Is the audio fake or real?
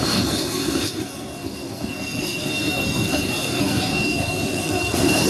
fake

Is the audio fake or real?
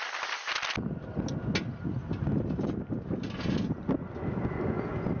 real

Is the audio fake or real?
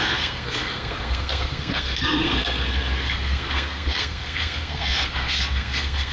fake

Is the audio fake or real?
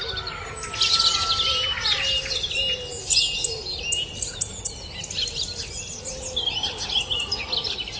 real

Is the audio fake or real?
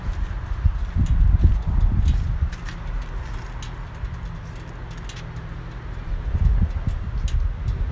real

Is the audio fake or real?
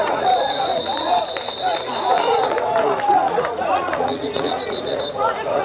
fake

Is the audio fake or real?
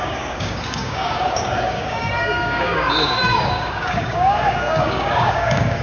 fake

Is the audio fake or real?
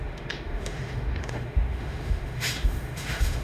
fake